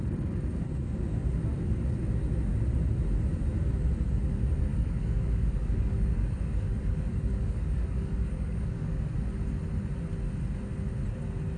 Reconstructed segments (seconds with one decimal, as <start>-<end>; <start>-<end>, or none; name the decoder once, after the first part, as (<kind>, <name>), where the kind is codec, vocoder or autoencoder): 4.7-9.2 (codec, DAC)